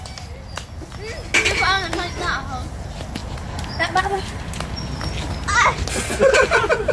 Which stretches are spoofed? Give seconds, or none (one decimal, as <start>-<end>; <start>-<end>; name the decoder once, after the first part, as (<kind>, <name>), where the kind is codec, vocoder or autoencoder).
none